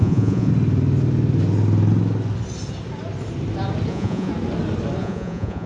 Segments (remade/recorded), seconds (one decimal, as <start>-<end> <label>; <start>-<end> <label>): 0.0-0.5 remade; 0.5-3.9 recorded; 3.9-4.3 remade; 4.3-5.0 recorded; 5.0-5.7 remade